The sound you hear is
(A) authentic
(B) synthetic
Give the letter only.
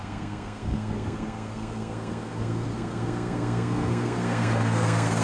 B